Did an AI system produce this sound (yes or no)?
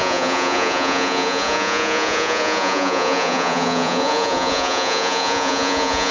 yes